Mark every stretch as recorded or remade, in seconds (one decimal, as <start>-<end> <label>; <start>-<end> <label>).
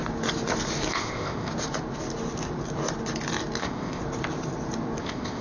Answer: 0.0-0.9 recorded; 0.9-1.5 remade; 1.5-3.6 recorded; 3.6-4.0 remade; 4.0-5.0 recorded; 5.0-5.4 remade